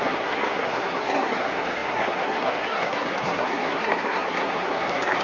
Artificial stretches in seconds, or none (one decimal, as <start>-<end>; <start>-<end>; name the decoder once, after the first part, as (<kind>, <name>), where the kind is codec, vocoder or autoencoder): 0.0-5.2 (codec, SNAC)